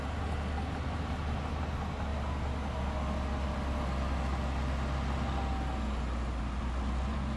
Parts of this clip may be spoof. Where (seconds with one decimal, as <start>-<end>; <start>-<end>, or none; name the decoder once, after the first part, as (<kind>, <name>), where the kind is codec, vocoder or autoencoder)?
none